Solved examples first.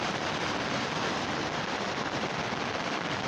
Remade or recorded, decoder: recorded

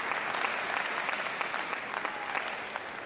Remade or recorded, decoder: recorded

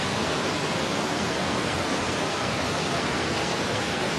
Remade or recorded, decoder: remade, codec, SNAC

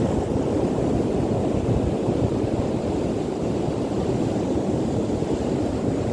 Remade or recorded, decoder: recorded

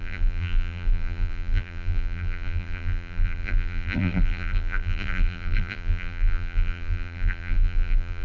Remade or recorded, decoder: remade, vocoder, BigVGAN v2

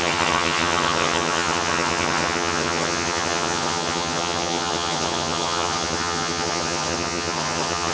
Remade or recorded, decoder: remade, vocoder, HiFi-GAN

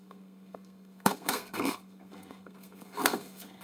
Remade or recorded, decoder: remade, codec, SNAC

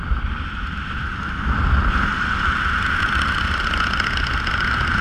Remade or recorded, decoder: recorded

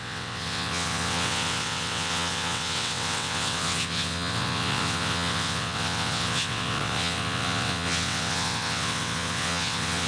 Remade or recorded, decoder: remade, vocoder, WaveNeXt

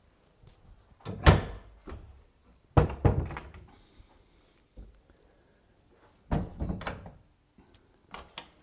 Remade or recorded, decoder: recorded